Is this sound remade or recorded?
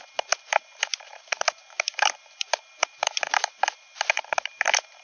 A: remade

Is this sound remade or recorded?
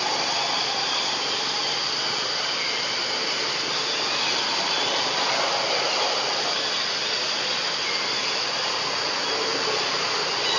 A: recorded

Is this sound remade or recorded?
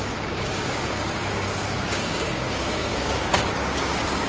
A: remade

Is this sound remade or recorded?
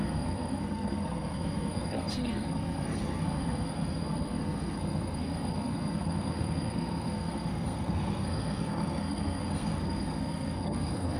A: remade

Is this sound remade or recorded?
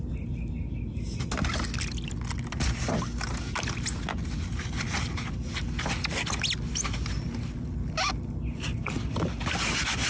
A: recorded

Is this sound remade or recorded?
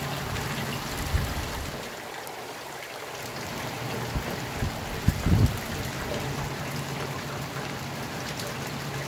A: recorded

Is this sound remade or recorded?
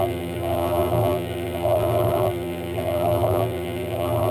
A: remade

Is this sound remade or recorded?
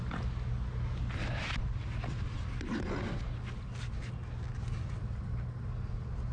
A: recorded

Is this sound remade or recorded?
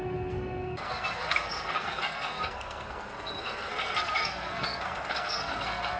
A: remade